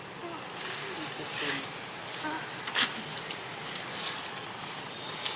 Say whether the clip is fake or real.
real